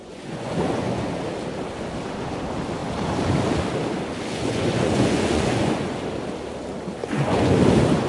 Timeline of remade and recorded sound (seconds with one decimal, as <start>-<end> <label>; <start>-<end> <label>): 0.0-1.1 remade; 1.1-4.3 recorded; 4.3-6.0 remade; 6.0-7.0 recorded; 7.0-7.5 remade; 7.5-8.1 recorded